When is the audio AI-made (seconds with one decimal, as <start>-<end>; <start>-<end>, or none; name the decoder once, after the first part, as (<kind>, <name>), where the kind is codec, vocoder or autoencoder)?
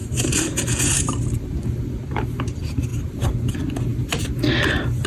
0.0-1.8 (vocoder, BigVGAN v2); 2.9-3.5